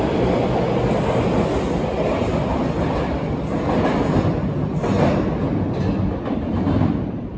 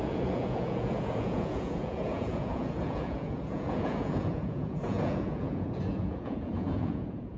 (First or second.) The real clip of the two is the first